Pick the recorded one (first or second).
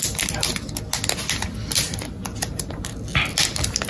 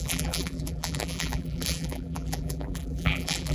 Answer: first